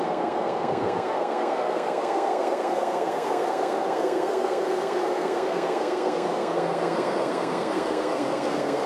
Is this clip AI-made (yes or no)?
yes